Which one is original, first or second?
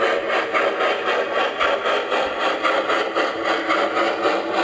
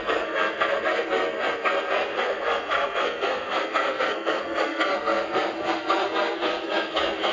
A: first